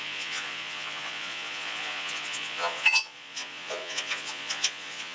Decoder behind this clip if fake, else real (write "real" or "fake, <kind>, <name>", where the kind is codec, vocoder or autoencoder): fake, vocoder, Vocos